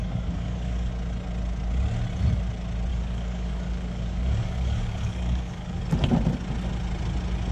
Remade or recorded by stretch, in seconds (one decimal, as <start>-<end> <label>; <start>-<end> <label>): 0.0-0.9 remade; 0.9-2.9 recorded; 2.9-5.8 remade; 5.8-7.5 recorded